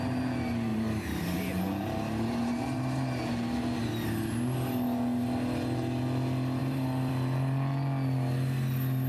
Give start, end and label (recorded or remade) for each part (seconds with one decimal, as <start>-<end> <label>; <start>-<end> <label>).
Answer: 0.0-0.7 recorded; 0.7-3.3 remade; 3.3-6.6 recorded; 6.6-7.1 remade; 7.1-9.1 recorded